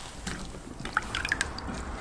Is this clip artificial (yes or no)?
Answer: no